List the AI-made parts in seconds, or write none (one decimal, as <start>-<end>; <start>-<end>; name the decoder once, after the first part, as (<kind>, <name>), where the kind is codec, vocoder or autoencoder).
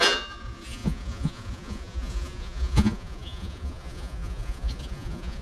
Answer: 0.0-5.4 (vocoder, Vocos)